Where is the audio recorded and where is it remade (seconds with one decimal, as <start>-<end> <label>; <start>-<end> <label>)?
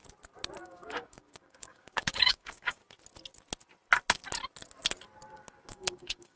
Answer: 0.0-0.6 recorded; 0.6-2.8 remade; 2.8-5.7 recorded; 5.7-6.4 remade